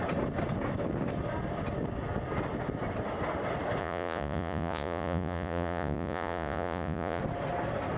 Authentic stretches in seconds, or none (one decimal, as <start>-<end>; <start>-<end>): 0.0-3.8; 7.2-8.0